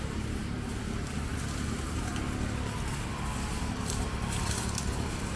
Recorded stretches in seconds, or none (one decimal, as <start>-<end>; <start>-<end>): 2.1-3.7